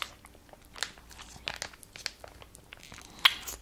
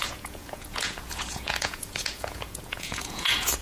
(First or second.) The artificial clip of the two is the second